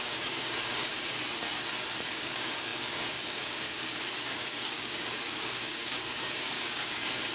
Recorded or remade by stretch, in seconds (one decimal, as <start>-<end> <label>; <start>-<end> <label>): 0.0-0.9 remade; 0.9-2.1 recorded; 2.1-7.3 remade